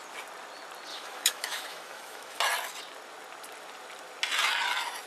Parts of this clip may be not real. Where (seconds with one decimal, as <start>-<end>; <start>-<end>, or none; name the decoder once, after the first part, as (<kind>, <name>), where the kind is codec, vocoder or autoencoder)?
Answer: 0.9-2.4 (autoencoder, DAC-VAE)